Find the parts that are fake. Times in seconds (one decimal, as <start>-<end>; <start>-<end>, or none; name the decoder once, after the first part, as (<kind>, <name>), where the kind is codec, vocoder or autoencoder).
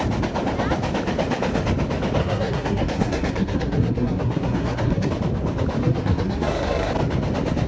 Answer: 2.2-5.1 (codec, SNAC); 5.8-6.9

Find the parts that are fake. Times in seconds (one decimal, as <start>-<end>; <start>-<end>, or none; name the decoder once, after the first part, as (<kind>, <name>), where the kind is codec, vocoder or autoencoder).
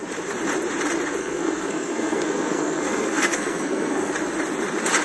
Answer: 1.2-4.1 (codec, SNAC)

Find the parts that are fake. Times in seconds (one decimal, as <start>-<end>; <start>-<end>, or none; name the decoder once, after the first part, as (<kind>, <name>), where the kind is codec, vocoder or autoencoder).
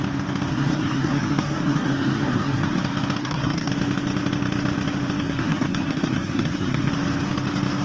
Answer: 0.5-2.8 (codec, SNAC); 3.2-3.7; 5.2-6.9